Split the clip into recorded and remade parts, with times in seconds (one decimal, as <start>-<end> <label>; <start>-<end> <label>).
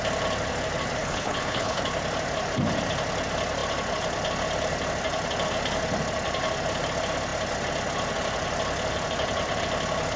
0.0-1.0 recorded; 1.0-1.8 remade; 1.8-10.2 recorded